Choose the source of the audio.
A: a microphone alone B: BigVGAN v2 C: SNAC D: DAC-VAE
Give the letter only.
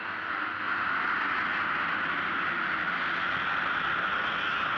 A